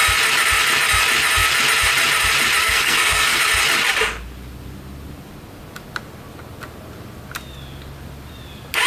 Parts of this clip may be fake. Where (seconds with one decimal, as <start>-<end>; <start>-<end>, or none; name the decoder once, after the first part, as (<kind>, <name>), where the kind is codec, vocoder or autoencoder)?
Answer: 2.6-3.4 (codec, SNAC)